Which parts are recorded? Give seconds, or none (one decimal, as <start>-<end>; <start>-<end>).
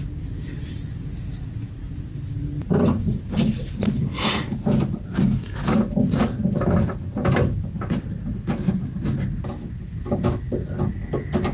0.0-11.5